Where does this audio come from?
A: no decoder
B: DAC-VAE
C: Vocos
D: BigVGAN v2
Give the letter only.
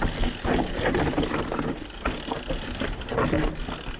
A